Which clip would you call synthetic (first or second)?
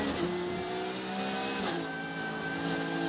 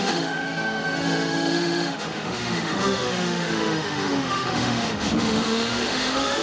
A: second